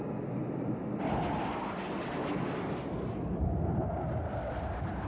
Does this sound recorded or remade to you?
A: recorded